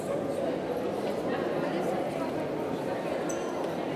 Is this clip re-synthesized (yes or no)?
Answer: no